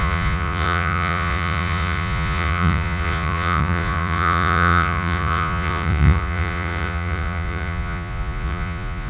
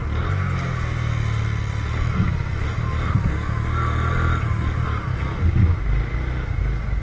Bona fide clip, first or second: second